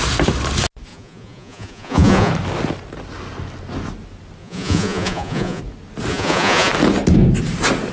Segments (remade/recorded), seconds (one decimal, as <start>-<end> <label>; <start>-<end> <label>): 0.0-0.9 recorded; 0.9-2.3 remade; 2.3-4.4 recorded; 4.4-5.6 remade; 5.6-6.1 recorded; 6.1-6.7 remade; 6.7-7.9 recorded